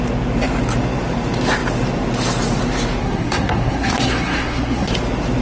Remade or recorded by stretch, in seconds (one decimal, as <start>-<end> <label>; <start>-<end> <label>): 0.0-3.0 recorded; 3.0-4.9 remade; 4.9-5.4 recorded